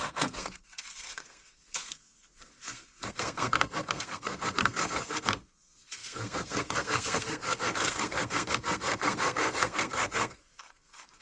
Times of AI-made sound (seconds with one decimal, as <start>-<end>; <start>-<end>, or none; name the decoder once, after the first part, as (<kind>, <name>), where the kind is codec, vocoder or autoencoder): 0.0-11.2 (codec, SNAC)

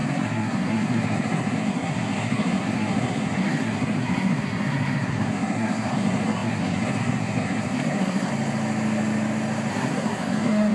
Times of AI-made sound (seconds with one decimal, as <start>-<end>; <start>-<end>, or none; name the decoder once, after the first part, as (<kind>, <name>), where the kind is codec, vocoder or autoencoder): 0.0-8.3 (codec, SNAC); 9.7-10.7